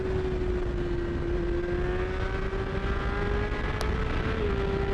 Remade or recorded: recorded